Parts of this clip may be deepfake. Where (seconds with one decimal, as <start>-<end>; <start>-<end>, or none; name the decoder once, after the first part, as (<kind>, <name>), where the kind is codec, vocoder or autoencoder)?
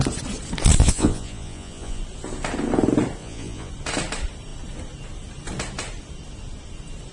0.8-2.0 (vocoder, Vocos); 3.2-3.7